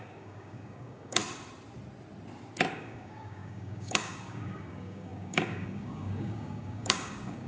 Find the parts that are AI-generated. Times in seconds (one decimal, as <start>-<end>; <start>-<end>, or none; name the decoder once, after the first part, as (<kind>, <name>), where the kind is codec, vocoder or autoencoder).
0.0-1.2 (codec, DAC); 2.7-7.5